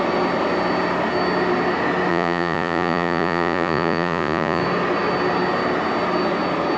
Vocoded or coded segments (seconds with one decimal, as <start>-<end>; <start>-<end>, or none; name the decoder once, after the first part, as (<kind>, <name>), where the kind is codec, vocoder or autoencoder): 2.1-4.6 (vocoder, Vocos)